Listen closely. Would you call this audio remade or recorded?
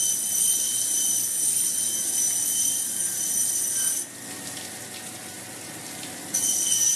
recorded